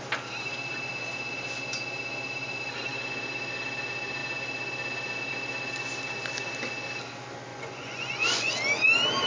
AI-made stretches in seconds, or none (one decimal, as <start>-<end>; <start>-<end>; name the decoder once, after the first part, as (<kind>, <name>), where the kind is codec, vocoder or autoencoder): 7.5-8.5 (vocoder, Vocos)